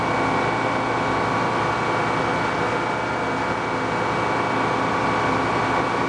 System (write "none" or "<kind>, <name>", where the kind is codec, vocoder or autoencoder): none